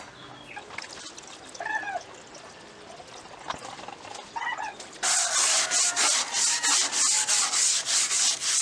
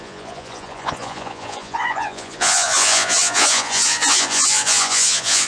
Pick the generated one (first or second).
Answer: second